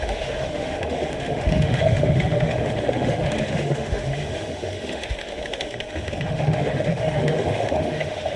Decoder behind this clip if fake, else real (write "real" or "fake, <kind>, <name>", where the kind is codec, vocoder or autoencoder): fake, autoencoder, DAC-VAE